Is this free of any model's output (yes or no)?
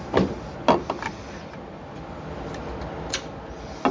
yes